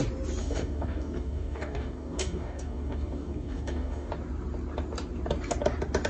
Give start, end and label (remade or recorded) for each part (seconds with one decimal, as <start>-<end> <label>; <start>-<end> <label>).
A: 0.0-0.4 recorded; 0.4-4.1 remade; 4.1-6.1 recorded